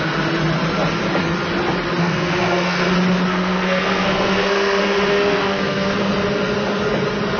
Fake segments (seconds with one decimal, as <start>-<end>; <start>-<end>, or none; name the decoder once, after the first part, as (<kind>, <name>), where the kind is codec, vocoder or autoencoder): 2.0-2.9 (codec, SNAC); 3.3-6.1